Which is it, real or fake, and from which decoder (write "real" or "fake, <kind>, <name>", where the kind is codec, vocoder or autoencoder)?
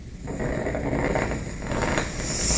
real